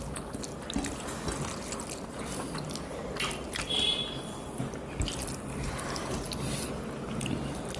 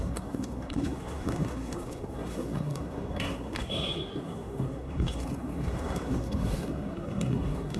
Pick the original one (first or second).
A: first